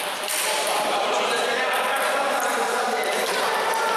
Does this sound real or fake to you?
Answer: fake